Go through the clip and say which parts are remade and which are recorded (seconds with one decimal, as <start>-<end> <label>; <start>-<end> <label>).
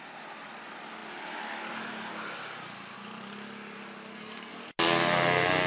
0.0-4.1 recorded; 4.1-4.6 remade; 4.6-5.7 recorded